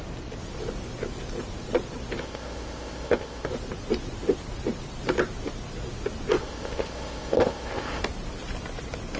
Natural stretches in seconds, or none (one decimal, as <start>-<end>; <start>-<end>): 0.0-2.2; 3.5-6.4; 8.0-9.2